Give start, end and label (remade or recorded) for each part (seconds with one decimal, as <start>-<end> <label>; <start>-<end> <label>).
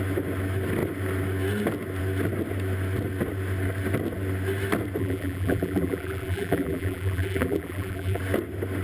0.0-5.0 recorded; 5.0-8.2 remade; 8.2-8.8 recorded